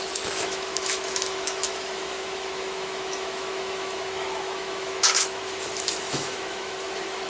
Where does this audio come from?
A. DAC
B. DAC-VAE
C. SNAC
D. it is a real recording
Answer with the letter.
B